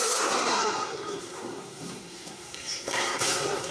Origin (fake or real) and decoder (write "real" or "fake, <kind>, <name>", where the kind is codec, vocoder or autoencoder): fake, codec, SNAC